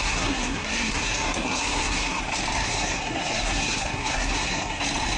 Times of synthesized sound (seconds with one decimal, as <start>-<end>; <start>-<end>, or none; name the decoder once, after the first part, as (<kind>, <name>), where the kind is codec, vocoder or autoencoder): 0.0-2.2 (codec, SNAC); 2.6-4.8